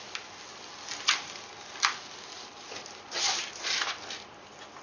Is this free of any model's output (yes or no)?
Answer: yes